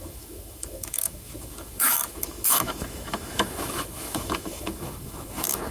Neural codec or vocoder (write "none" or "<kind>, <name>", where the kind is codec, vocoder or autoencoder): autoencoder, DAC-VAE